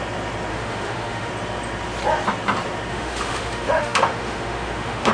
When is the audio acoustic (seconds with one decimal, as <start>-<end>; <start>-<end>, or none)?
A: 0.0-0.5; 1.3-2.9